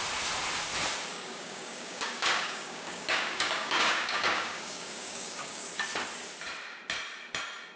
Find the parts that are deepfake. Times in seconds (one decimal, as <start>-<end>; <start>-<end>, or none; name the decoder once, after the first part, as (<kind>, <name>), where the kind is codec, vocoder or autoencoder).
1.1-5.7 (codec, DAC)